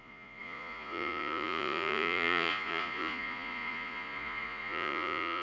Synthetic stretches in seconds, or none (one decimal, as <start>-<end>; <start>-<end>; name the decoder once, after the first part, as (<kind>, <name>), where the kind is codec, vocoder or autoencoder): 0.0-5.4 (vocoder, Vocos)